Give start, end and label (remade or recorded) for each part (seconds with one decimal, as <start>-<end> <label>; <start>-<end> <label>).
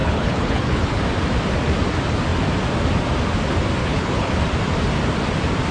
0.0-1.0 remade; 1.0-3.8 recorded; 3.8-4.3 remade; 4.3-5.7 recorded